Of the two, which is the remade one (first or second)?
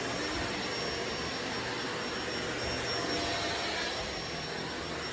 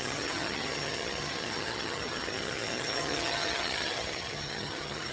second